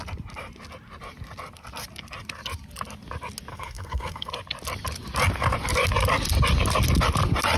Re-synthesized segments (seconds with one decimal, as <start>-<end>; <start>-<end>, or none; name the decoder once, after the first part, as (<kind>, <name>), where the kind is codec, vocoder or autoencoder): 3.5-4.3 (codec, SNAC)